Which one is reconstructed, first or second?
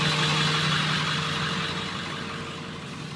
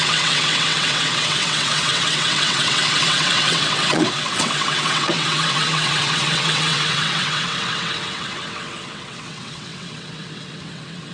second